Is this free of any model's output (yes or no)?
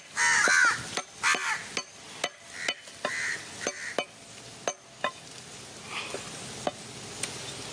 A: yes